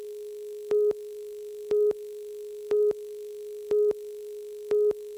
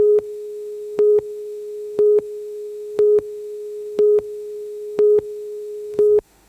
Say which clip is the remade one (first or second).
second